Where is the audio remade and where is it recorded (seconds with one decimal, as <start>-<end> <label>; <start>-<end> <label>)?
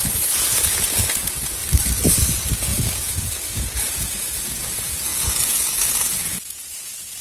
0.0-1.6 remade; 1.6-2.1 recorded; 2.1-7.2 remade